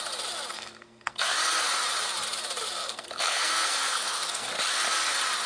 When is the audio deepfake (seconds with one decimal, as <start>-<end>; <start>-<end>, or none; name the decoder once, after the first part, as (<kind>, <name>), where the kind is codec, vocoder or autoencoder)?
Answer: 0.5-1.3 (codec, SNAC); 2.8-4.5